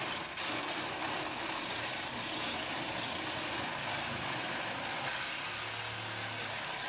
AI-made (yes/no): no